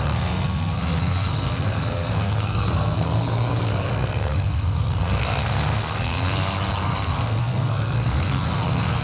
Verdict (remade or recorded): remade